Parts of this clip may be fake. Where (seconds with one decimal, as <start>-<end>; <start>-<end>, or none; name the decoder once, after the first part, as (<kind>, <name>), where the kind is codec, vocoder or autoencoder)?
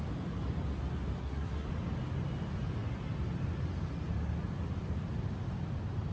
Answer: 1.2-1.7 (codec, SNAC)